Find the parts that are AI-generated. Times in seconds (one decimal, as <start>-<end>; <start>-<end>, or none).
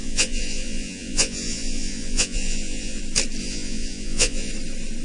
0.0-3.0; 3.4-4.5